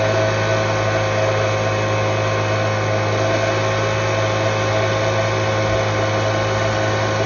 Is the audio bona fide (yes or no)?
yes